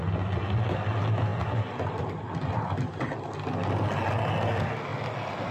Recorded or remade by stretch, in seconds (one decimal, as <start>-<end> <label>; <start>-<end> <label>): 0.0-5.5 recorded